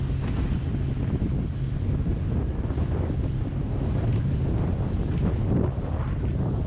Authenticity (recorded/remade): recorded